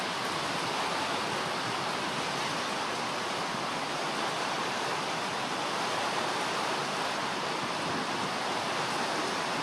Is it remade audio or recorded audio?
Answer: recorded